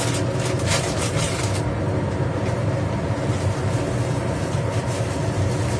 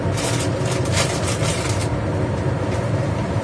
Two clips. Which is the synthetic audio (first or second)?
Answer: second